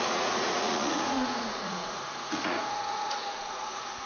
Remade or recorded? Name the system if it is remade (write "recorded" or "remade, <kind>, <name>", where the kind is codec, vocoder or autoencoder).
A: remade, vocoder, Vocos